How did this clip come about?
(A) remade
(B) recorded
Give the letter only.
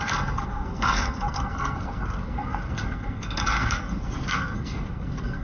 A